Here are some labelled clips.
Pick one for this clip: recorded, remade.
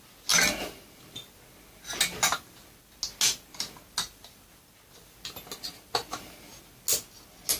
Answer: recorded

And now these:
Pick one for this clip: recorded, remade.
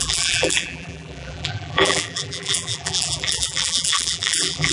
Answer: remade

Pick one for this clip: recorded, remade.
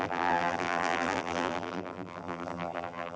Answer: remade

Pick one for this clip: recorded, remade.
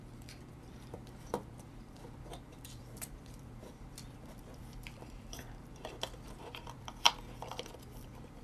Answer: remade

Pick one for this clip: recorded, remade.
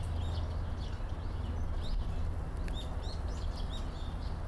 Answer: recorded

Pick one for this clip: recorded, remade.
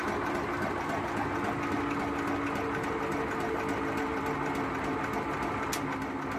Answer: recorded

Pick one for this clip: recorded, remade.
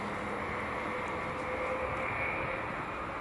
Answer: recorded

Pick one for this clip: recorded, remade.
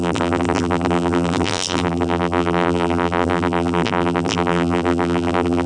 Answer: remade